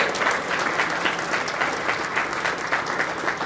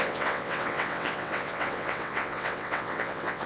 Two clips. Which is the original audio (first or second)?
first